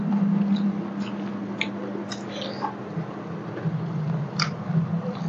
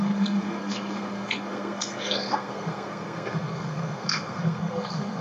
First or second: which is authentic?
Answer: first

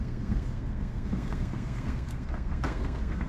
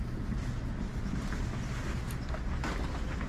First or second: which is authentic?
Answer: second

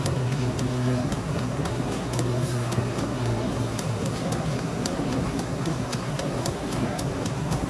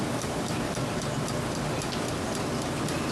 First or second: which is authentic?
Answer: second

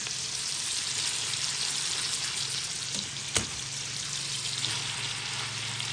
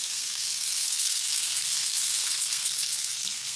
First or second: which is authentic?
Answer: first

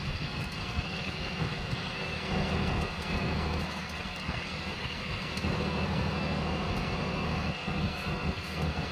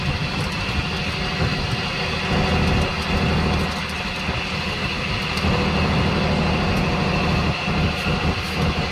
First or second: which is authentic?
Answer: second